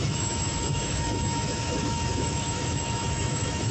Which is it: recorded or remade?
remade